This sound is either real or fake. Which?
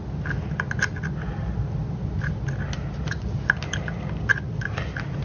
real